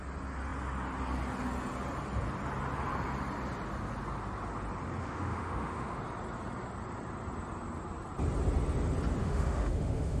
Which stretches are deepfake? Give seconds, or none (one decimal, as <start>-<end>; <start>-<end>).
5.0-6.0; 9.2-10.2